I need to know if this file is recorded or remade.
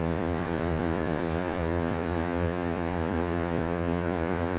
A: remade